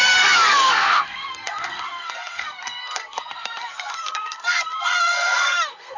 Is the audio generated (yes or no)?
yes